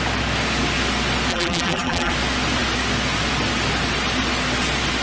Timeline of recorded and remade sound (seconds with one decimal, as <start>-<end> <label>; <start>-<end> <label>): 0.0-1.3 recorded; 1.3-2.1 remade; 2.1-5.0 recorded